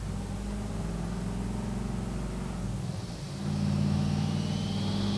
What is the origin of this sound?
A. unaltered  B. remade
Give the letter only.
A